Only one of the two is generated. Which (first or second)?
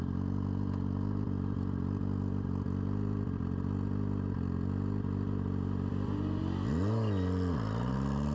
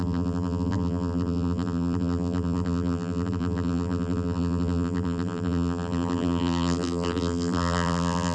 second